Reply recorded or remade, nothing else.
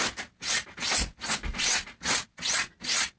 recorded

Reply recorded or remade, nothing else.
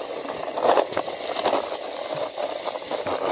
recorded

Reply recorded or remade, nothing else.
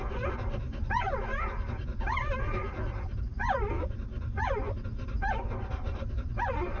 recorded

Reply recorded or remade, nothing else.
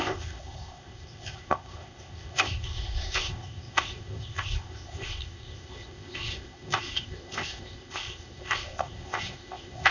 remade